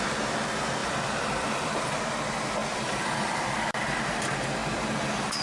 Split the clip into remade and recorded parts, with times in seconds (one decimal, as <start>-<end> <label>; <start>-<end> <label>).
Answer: 0.0-0.8 recorded; 0.8-2.0 remade; 2.0-2.6 recorded; 2.6-4.0 remade; 4.0-5.4 recorded